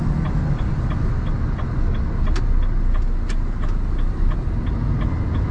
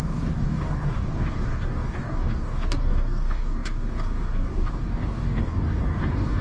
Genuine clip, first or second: first